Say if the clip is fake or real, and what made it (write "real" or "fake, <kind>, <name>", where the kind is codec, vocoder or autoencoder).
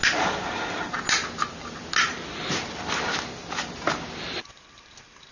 real